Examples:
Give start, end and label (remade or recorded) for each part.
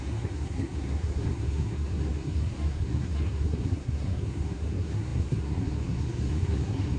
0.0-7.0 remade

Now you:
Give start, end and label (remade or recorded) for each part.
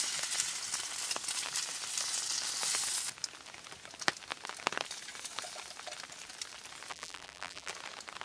0.0-6.9 recorded; 6.9-7.7 remade; 7.7-8.2 recorded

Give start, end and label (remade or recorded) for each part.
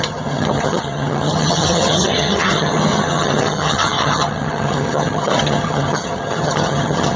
0.0-7.2 remade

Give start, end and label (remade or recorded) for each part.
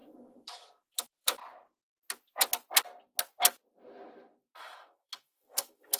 0.0-1.4 remade; 1.4-4.6 recorded; 4.6-6.0 remade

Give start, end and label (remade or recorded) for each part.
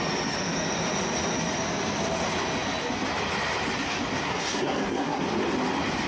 0.0-4.2 recorded; 4.2-5.2 remade; 5.2-6.1 recorded